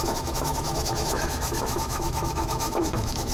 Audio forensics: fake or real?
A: fake